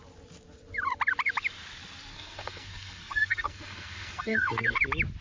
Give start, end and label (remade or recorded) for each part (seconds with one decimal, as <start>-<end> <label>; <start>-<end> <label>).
0.0-2.1 recorded; 2.1-4.8 remade; 4.8-5.2 recorded